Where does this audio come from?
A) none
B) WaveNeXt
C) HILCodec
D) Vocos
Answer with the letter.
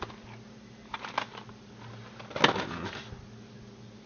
A